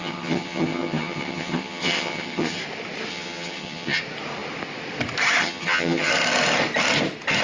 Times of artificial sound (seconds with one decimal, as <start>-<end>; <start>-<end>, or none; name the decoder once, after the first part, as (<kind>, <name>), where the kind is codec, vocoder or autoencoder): 0.0-2.6 (vocoder, HiFi-GAN); 3.1-4.0; 5.4-6.1